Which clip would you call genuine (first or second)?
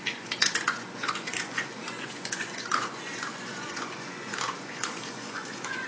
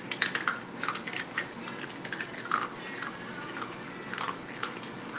second